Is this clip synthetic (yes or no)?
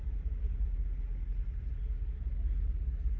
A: no